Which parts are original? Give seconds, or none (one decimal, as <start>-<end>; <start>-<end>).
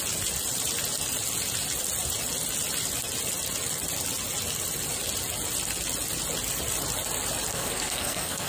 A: 0.0-7.5